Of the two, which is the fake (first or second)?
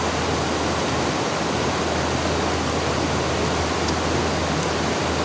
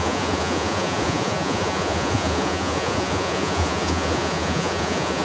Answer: second